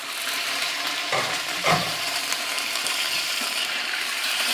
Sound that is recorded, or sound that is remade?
remade